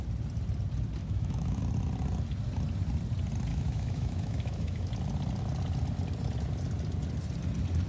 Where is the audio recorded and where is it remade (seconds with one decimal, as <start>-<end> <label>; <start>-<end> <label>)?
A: 0.0-1.0 recorded; 1.0-1.6 remade; 1.6-3.5 recorded; 3.5-4.9 remade; 4.9-7.9 recorded